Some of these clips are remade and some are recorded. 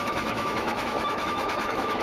remade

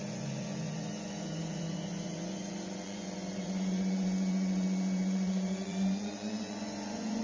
remade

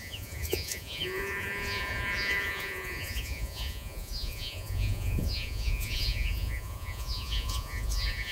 remade